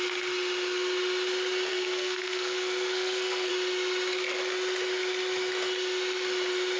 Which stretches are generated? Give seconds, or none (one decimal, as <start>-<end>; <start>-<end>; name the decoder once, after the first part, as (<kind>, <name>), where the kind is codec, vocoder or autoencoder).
1.7-3.5 (codec, SNAC)